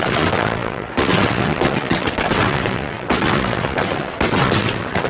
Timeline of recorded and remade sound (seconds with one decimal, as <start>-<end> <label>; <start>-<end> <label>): 0.0-5.1 remade